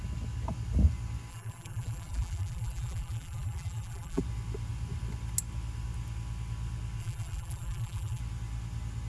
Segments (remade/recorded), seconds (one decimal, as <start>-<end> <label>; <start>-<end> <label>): 0.0-1.3 recorded; 1.3-4.2 remade; 4.2-7.0 recorded; 7.0-8.2 remade; 8.2-9.1 recorded